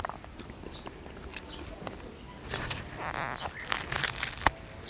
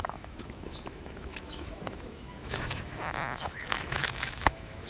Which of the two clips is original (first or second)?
first